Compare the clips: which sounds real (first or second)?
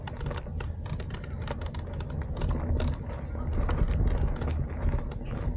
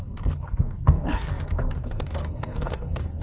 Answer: first